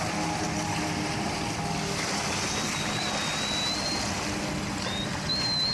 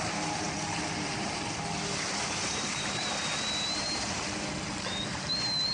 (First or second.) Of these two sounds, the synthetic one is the second